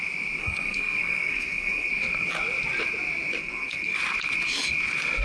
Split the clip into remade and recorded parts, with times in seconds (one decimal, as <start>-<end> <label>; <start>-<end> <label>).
0.0-0.4 recorded; 0.4-1.9 remade; 1.9-3.4 recorded; 3.4-4.0 remade; 4.0-5.2 recorded